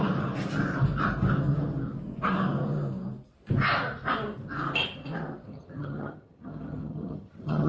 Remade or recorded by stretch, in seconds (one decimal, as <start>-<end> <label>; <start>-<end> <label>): 0.0-5.5 recorded; 5.5-7.7 remade